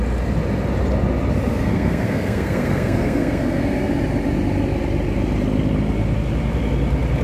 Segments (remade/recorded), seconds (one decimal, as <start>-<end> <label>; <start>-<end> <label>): 0.0-1.5 recorded; 1.5-3.9 remade; 3.9-7.2 recorded